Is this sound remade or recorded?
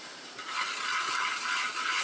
recorded